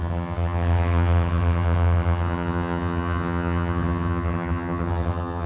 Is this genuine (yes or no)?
no